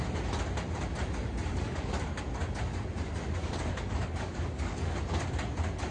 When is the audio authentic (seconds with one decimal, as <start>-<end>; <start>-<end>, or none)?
0.0-1.5; 2.2-3.4; 4.9-5.9